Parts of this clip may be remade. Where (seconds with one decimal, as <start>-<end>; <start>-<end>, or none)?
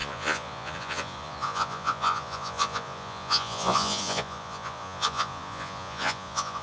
0.0-6.6